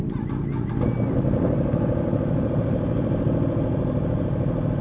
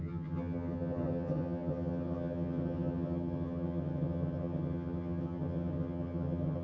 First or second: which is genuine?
first